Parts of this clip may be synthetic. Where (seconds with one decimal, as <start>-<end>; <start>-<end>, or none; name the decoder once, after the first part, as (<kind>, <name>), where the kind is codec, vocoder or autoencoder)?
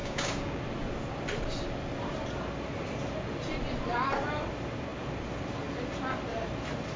0.0-0.6 (codec, DAC)